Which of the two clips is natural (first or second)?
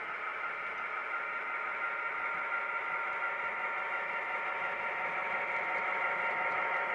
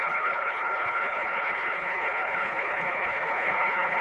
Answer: first